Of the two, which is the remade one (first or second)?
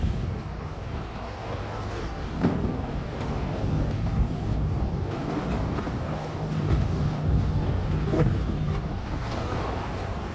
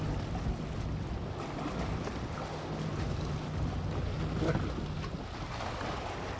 first